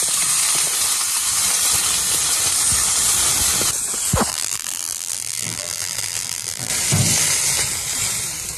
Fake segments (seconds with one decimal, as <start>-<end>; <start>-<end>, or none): 4.3-6.7